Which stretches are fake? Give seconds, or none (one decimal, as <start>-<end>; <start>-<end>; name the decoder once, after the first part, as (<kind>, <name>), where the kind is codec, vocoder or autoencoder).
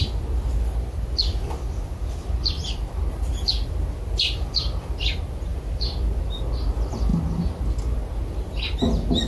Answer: none